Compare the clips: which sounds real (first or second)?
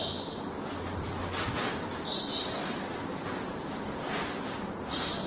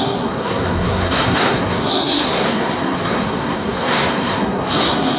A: first